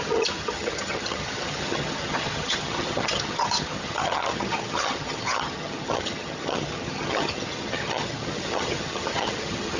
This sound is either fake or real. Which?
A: fake